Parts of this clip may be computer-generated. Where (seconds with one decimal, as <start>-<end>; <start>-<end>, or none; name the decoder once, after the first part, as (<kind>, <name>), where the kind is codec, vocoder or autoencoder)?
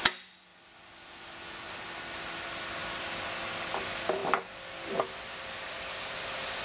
none